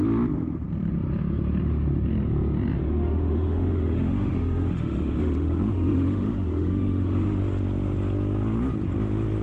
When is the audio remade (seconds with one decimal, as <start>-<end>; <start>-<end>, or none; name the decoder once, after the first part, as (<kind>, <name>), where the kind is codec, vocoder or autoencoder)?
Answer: 2.8-7.4 (autoencoder, DAC-VAE)